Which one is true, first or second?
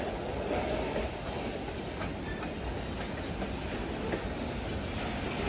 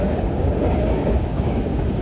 first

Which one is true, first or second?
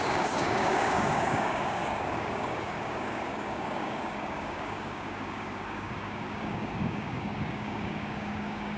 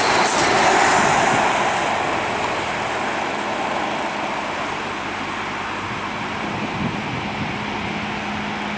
second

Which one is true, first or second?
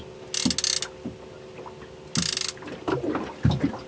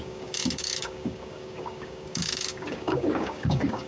first